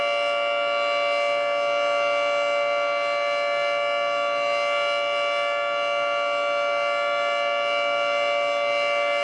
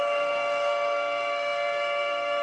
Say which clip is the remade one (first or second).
second